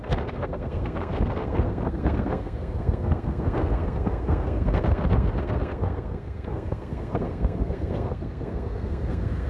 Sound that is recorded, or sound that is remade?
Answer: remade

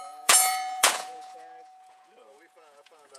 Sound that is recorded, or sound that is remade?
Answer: remade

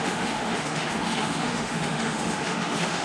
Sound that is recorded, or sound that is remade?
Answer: remade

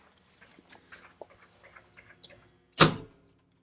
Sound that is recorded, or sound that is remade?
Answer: recorded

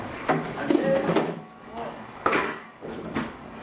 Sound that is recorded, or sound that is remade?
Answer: remade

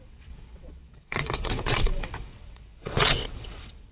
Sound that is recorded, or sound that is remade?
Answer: remade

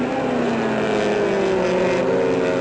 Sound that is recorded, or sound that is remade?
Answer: recorded